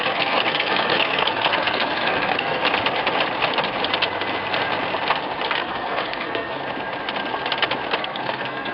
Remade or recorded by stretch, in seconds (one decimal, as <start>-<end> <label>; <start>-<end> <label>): 0.0-2.6 remade; 2.6-5.5 recorded; 5.5-6.6 remade; 6.6-8.0 recorded; 8.0-8.7 remade